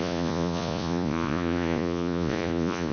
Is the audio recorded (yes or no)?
no